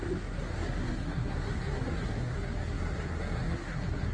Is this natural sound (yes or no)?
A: no